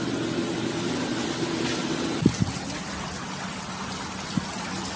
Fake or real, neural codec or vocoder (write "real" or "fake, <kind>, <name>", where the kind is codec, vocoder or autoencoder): real